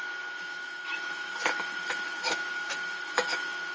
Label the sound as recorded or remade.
remade